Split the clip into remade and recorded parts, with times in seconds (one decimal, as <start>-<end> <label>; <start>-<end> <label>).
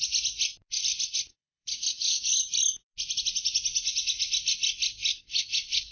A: 0.0-1.3 recorded; 1.3-2.5 remade; 2.5-5.1 recorded; 5.1-5.9 remade